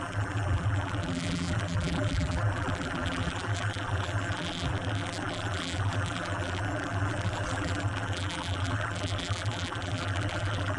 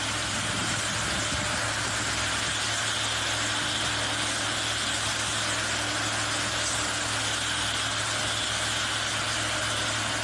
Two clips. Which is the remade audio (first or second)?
first